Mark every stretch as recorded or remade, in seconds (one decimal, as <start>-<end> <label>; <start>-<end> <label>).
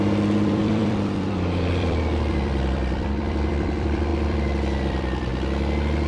0.0-5.3 remade; 5.3-6.1 recorded